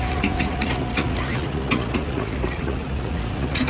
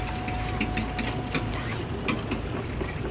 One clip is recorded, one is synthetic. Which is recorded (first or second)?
second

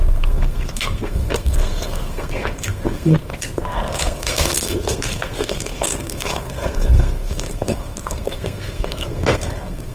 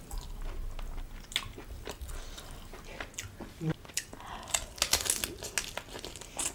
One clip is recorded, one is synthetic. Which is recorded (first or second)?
second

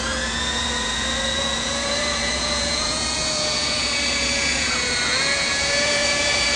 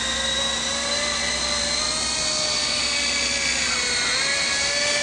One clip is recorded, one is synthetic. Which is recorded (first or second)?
second